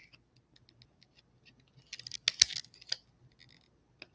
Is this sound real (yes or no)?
yes